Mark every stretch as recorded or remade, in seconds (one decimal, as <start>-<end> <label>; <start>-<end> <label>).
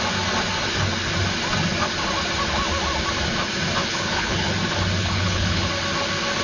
0.0-3.9 recorded; 3.9-4.5 remade; 4.5-5.0 recorded; 5.0-5.7 remade; 5.7-6.4 recorded